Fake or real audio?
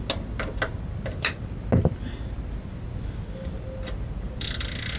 real